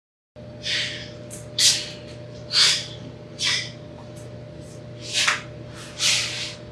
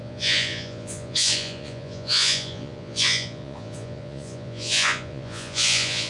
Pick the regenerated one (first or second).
second